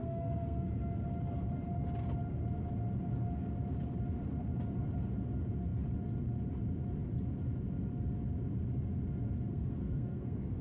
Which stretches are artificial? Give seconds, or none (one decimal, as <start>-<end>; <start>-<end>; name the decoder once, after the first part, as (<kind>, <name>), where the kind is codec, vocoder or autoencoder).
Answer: 0.0-0.7 (codec, SNAC); 9.5-10.6